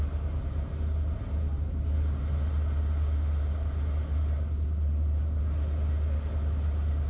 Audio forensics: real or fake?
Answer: real